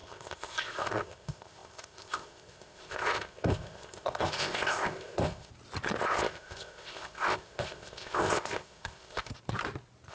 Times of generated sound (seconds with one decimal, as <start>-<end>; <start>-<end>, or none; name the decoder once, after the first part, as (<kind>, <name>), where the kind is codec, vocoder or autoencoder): 0.0-5.5 (codec, ZipCodec); 6.0-9.3